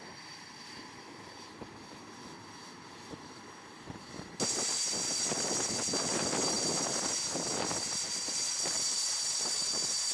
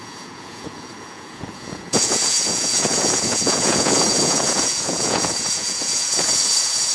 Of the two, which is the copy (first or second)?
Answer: second